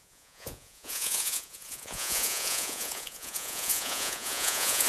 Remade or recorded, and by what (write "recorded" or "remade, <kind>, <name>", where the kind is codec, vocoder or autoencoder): remade, vocoder, Vocos